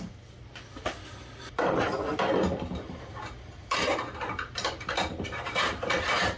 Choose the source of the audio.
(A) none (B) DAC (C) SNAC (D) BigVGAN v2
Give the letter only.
D